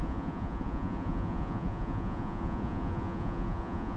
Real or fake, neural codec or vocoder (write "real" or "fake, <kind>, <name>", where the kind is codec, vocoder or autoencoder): fake, vocoder, Vocos